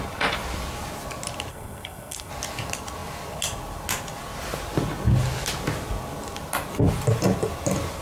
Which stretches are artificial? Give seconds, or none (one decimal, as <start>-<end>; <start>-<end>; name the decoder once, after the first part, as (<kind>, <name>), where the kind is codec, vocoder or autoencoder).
1.5-2.3 (codec, SNAC)